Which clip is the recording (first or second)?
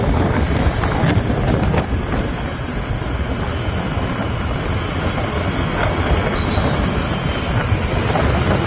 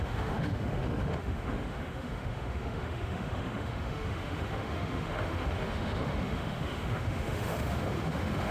first